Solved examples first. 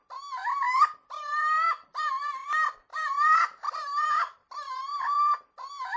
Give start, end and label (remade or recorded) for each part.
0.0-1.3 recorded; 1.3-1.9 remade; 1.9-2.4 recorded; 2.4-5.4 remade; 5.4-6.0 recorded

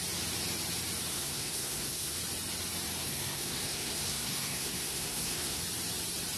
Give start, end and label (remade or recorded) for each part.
0.0-1.1 recorded; 1.1-2.2 remade; 2.2-3.0 recorded; 3.0-5.6 remade; 5.6-6.4 recorded